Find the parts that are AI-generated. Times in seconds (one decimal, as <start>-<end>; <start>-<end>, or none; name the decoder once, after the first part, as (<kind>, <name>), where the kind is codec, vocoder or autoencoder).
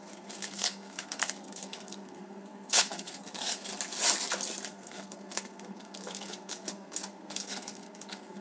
0.0-3.7 (codec, SNAC); 4.7-8.4